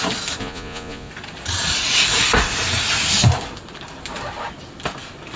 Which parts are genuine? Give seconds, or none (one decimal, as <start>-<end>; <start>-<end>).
0.0-0.4; 1.1-5.4